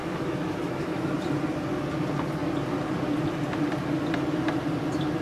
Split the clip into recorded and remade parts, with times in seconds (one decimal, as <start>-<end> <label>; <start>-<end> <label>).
0.0-1.1 remade; 1.1-5.2 recorded